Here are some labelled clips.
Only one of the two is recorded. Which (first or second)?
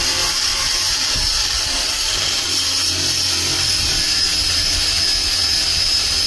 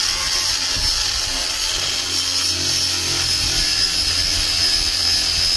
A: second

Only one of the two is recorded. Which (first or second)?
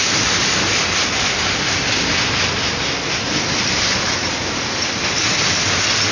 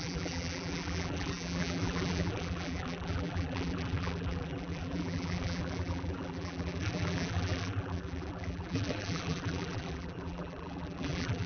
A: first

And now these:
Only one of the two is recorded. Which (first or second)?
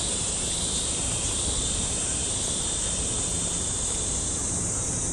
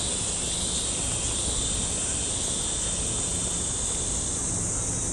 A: second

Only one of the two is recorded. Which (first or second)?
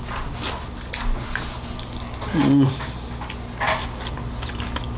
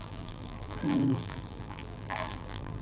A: first